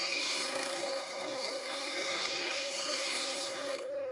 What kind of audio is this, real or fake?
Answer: fake